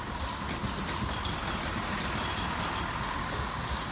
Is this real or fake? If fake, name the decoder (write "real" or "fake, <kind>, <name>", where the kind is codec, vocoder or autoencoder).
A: real